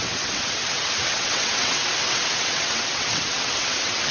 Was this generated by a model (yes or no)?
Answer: yes